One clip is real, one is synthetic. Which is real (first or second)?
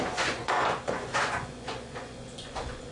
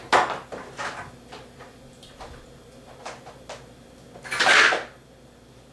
second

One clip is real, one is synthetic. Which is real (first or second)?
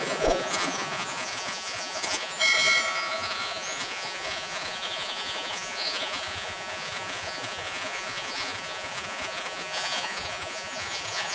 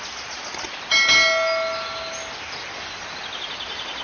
second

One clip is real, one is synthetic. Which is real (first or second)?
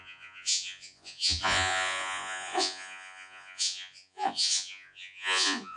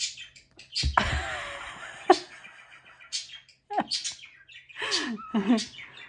second